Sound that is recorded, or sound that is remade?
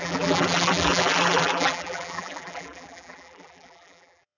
remade